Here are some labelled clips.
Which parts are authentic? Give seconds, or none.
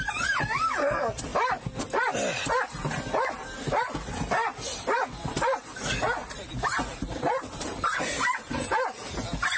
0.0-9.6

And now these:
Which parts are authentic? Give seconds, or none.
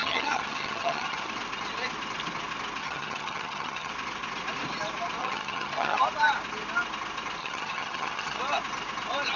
1.3-2.8; 3.9-5.2; 6.0-7.4; 8.4-9.4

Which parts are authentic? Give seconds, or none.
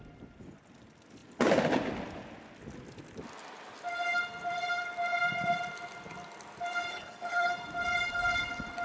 0.0-6.9; 7.5-8.8